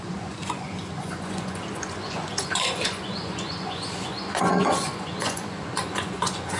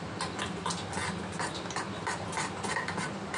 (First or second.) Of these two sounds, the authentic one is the second